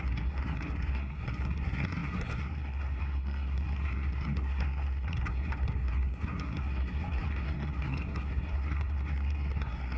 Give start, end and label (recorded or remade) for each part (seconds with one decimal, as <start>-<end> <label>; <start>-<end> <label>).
0.0-10.0 remade